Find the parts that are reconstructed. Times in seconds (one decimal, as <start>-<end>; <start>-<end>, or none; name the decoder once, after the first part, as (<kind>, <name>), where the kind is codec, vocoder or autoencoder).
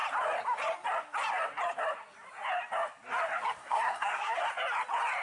3.6-4.4 (codec, SNAC)